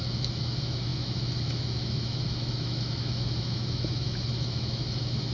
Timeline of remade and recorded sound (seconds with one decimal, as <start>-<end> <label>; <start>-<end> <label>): 0.0-5.3 remade